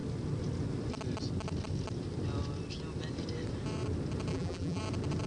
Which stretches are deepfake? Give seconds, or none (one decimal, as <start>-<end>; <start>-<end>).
4.3-4.8